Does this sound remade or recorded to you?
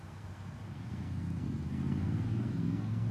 remade